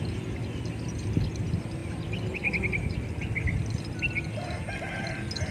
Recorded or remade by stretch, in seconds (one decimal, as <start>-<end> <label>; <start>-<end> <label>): 0.0-5.5 recorded

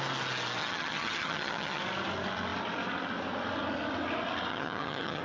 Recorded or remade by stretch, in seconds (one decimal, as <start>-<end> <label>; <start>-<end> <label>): 0.0-0.6 recorded; 0.6-1.8 remade; 1.8-4.5 recorded; 4.5-5.2 remade

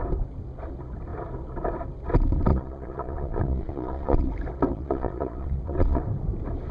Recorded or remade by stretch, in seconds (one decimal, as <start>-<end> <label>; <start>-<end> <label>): 0.0-2.5 recorded; 2.5-4.3 remade; 4.3-4.7 recorded; 4.7-6.0 remade; 6.0-6.7 recorded

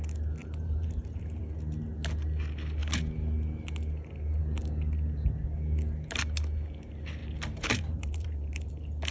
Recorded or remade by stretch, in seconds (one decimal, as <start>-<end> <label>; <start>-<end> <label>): 0.0-0.4 recorded; 0.4-1.4 remade; 1.4-7.2 recorded; 7.2-8.7 remade; 8.7-9.1 recorded

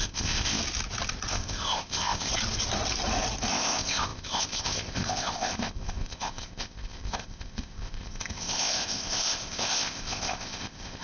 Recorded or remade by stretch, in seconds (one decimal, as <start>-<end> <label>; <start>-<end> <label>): 0.0-0.6 remade; 0.6-1.3 recorded; 1.3-2.3 remade; 2.3-3.5 recorded; 3.5-11.0 remade

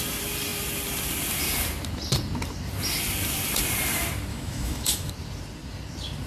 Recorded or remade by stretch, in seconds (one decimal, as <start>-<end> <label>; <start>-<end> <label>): 0.0-4.3 recorded; 4.3-5.1 remade; 5.1-6.3 recorded

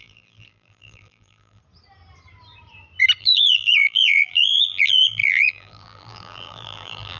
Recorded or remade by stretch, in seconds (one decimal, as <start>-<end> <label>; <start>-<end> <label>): 0.0-1.6 remade; 1.6-3.2 recorded; 3.2-7.2 remade